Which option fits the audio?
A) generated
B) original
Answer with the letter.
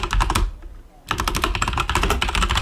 B